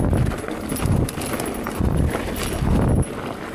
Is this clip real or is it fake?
real